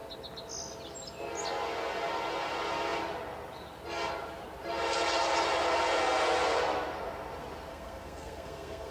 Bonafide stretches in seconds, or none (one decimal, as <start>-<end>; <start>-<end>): 0.0-7.7